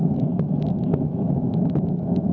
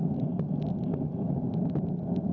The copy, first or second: first